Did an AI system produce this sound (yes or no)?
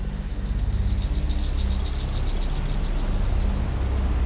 no